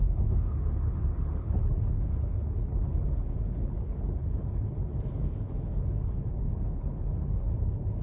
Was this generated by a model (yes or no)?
yes